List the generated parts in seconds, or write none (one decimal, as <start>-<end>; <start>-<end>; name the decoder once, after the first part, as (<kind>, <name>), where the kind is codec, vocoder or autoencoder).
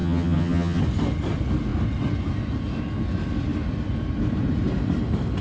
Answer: 0.0-0.8 (vocoder, HiFi-GAN)